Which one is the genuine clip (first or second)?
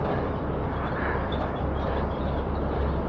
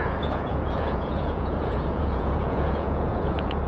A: first